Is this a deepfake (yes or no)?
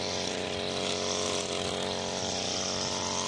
no